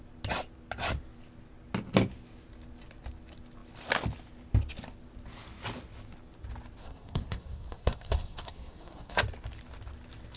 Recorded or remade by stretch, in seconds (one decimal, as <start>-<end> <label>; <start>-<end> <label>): 0.0-6.8 recorded; 6.8-9.2 remade; 9.2-10.4 recorded